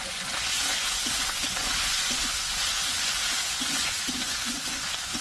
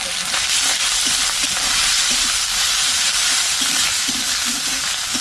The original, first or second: second